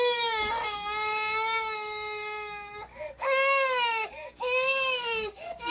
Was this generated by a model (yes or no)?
yes